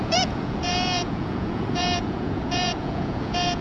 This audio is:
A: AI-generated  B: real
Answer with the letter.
A